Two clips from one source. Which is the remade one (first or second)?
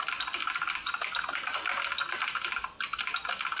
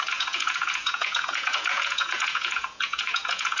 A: second